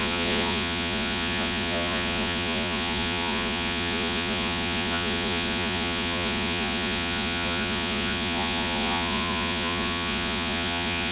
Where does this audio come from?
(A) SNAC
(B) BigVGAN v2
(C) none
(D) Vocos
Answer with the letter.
D